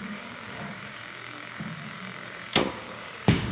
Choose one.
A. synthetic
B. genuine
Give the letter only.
A